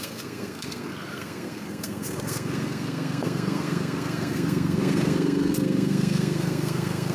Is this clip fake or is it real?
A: fake